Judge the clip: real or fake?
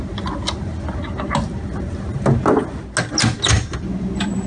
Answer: real